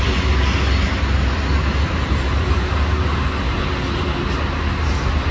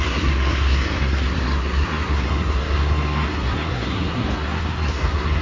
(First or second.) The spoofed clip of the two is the second